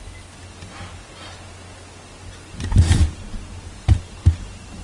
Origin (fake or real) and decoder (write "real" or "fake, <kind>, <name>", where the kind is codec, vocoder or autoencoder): real